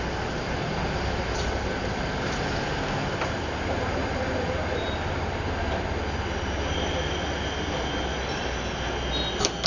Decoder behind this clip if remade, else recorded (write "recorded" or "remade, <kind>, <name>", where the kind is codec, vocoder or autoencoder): recorded